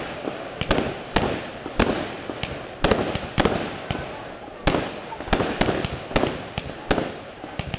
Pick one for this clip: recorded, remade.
recorded